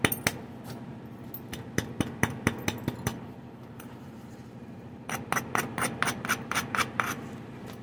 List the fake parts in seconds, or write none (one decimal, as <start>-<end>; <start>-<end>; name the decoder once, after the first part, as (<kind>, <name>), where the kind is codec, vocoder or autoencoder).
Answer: 3.1-5.1 (vocoder, BigVGAN v2)